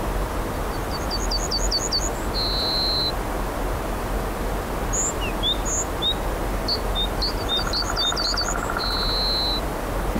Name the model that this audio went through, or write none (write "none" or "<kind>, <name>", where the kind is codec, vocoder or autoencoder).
none